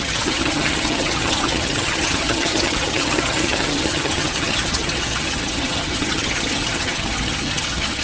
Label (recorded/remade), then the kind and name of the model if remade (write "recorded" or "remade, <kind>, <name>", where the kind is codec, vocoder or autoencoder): remade, vocoder, HiFi-GAN